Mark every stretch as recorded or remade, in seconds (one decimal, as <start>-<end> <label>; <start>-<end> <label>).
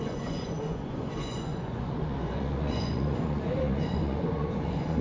0.0-5.0 remade